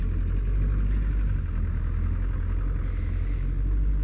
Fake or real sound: real